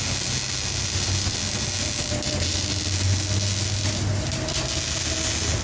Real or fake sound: real